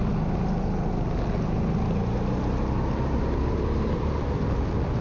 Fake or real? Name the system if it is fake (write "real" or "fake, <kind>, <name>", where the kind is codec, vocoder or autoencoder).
real